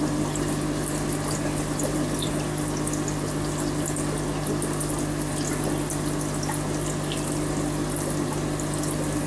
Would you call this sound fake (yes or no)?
no